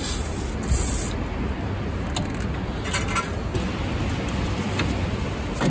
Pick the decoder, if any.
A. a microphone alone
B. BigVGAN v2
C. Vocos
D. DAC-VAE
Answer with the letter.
A